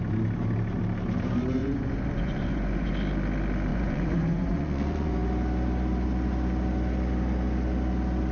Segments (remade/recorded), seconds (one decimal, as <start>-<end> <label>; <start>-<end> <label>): 0.0-1.6 recorded; 1.6-2.9 remade; 2.9-3.7 recorded; 3.7-5.1 remade; 5.1-8.3 recorded